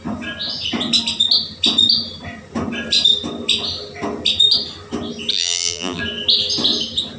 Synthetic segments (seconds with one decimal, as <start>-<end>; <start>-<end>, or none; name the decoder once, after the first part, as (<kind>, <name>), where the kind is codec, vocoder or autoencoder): 5.3-6.0 (vocoder, BigVGAN v2)